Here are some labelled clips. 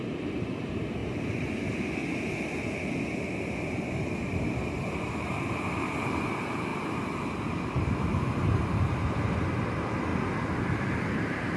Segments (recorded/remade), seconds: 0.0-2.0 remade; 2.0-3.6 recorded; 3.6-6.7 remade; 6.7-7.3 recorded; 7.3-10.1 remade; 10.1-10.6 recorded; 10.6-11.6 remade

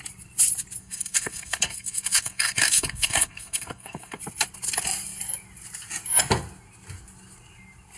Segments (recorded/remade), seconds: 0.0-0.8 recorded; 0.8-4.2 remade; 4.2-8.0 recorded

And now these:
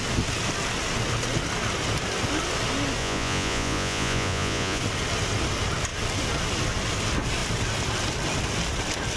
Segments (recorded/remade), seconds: 0.0-3.0 recorded; 3.0-4.8 remade; 4.8-9.2 recorded

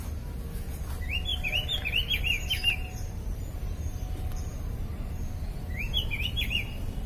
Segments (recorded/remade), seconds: 0.0-1.3 recorded; 1.3-5.1 remade; 5.1-7.1 recorded

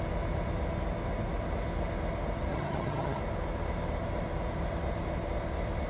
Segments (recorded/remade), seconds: 0.0-2.5 recorded; 2.5-3.2 remade; 3.2-5.9 recorded

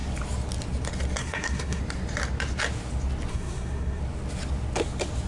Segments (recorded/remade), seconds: 0.0-1.2 recorded; 1.2-1.8 remade; 1.8-3.3 recorded; 3.3-4.0 remade; 4.0-5.3 recorded